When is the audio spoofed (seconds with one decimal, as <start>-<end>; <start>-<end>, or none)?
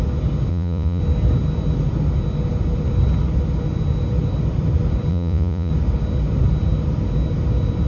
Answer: 0.5-1.0; 5.1-5.7